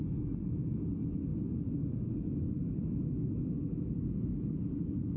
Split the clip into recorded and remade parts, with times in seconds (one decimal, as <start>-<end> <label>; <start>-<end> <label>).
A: 0.0-5.2 recorded